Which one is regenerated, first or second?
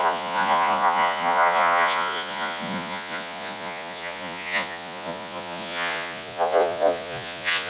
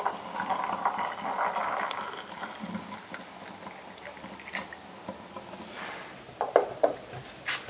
first